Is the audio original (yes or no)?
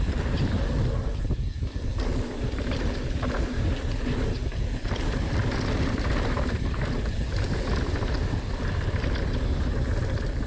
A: yes